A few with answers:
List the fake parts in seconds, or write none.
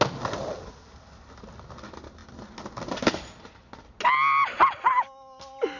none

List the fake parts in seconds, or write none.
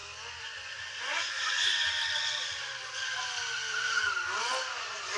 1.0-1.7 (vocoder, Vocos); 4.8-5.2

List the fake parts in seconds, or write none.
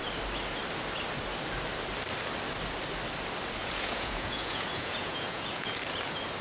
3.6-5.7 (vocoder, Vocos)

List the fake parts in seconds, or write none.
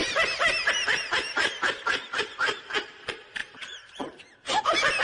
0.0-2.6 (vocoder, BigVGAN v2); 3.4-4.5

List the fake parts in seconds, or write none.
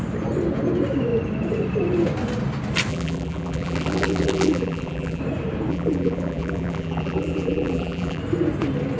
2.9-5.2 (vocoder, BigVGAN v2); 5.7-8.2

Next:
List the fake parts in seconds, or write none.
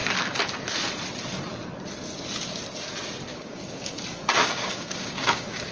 3.3-4.0 (codec, DAC); 4.4-5.7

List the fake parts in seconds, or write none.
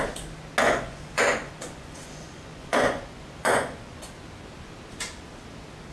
0.6-4.1 (vocoder, Vocos)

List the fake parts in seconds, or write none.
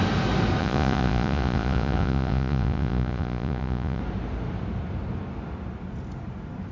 0.6-4.0 (vocoder, Vocos)